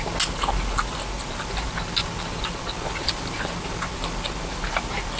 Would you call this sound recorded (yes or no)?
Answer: yes